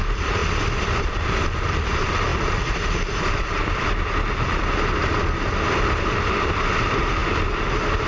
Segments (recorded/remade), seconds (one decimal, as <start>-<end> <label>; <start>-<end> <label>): 0.0-0.4 remade; 0.4-1.0 recorded; 1.0-8.1 remade